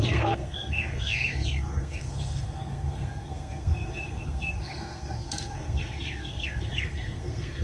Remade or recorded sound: remade